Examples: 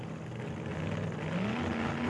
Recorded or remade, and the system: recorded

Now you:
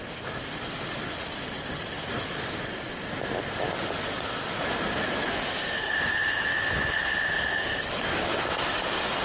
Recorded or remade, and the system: recorded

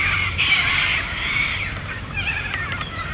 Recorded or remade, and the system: remade, vocoder, BigVGAN v2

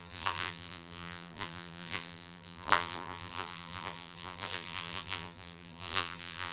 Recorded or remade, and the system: remade, vocoder, BigVGAN v2